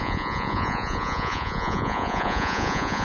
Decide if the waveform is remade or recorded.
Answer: remade